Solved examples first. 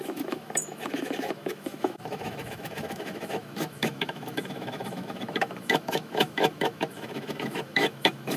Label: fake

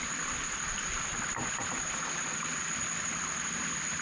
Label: real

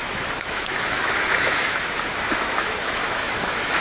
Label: fake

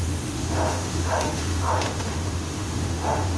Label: fake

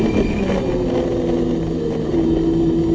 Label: real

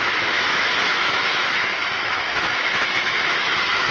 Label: fake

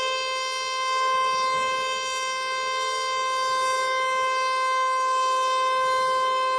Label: real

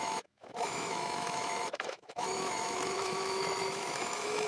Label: fake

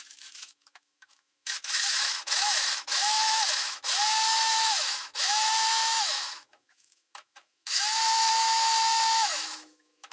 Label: fake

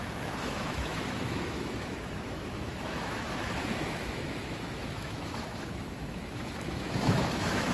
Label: fake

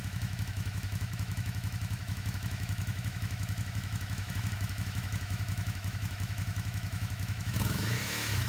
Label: fake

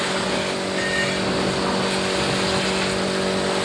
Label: real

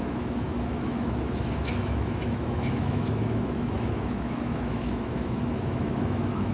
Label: fake